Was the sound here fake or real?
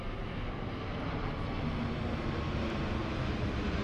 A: real